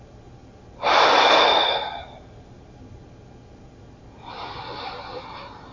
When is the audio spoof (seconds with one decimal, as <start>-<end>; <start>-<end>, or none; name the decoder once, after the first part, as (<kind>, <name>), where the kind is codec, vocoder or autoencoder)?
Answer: none